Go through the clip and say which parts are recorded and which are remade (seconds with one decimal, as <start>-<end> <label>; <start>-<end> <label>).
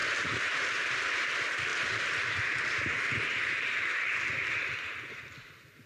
0.0-5.9 recorded